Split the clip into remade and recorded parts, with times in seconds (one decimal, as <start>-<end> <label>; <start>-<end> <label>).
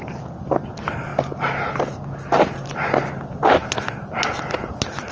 0.0-5.1 recorded